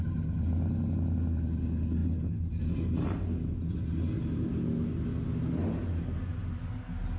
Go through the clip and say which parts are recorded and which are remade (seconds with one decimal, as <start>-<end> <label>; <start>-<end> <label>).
0.0-7.2 recorded